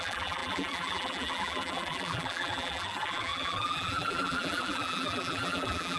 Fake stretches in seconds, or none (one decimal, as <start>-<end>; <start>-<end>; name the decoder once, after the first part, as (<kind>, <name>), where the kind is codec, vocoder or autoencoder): 0.0-6.0 (vocoder, BigVGAN v2)